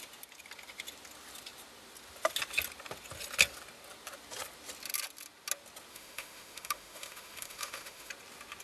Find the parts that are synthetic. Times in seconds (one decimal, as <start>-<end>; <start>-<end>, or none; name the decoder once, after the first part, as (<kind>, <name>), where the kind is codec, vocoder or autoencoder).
5.9-8.1 (autoencoder, DAC-VAE)